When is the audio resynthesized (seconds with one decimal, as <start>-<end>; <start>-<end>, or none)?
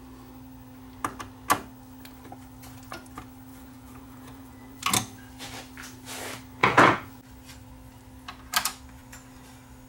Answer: 3.5-4.8; 6.6-7.2